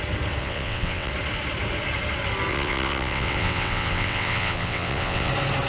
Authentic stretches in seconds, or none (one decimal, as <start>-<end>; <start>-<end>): 0.0-0.4; 1.1-2.5; 5.3-5.7